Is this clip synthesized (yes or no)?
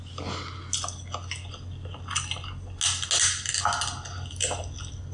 no